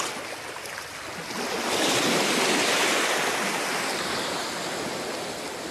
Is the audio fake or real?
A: real